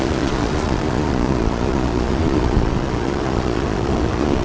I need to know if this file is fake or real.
fake